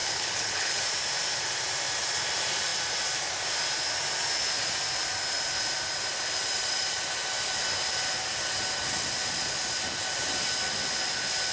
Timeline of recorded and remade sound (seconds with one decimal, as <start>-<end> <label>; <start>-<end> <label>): 0.0-0.8 remade; 0.8-11.5 recorded